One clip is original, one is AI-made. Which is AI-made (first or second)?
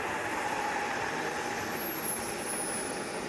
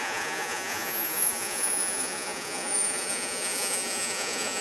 second